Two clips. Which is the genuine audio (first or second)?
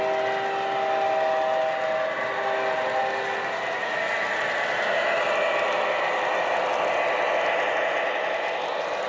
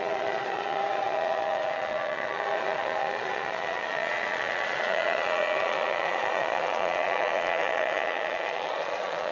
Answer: first